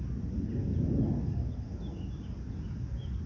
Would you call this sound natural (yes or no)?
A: yes